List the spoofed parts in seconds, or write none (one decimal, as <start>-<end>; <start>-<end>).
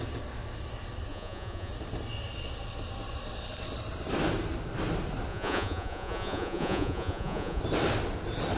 1.1-1.7; 5.3-7.6